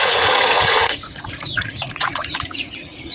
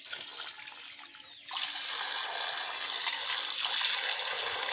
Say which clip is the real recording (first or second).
second